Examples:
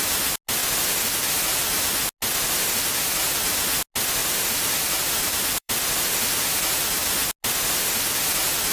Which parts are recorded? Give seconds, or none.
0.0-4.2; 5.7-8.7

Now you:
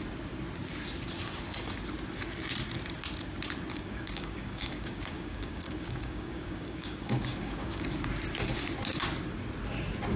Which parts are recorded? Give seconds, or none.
0.0-3.7; 7.8-10.2

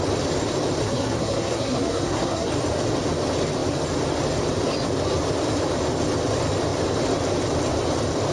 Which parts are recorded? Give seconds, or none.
0.0-0.8; 2.5-8.3